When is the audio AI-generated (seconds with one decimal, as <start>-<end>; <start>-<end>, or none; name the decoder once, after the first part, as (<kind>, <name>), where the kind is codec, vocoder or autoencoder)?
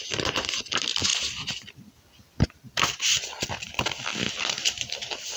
none